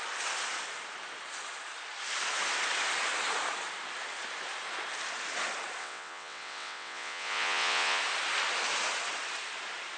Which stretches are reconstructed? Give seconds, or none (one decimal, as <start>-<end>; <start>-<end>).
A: 5.8-8.0